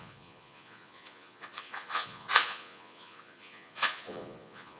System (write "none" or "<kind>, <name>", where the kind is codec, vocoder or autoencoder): vocoder, Vocos